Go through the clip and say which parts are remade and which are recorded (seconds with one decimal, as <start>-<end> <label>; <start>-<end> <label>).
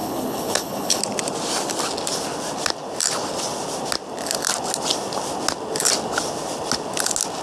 0.0-1.0 remade; 1.0-7.4 recorded